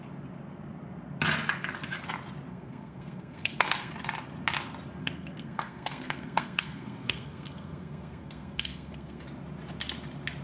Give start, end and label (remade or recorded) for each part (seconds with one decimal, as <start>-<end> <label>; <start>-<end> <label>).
0.0-2.5 recorded; 2.5-3.9 remade; 3.9-5.0 recorded; 5.0-9.2 remade; 9.2-10.4 recorded